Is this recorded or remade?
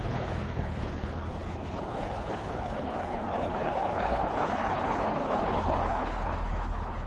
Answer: remade